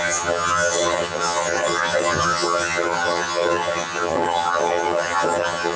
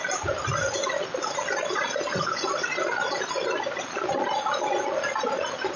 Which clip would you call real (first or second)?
second